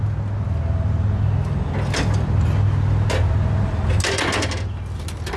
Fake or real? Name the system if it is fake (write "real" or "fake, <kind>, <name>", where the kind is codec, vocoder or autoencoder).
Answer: real